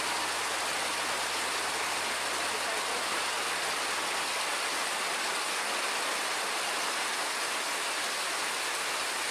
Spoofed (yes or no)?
no